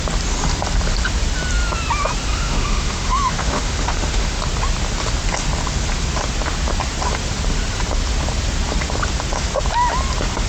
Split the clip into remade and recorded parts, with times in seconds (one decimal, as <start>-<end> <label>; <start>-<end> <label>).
0.0-2.3 recorded; 2.3-4.4 remade; 4.4-10.5 recorded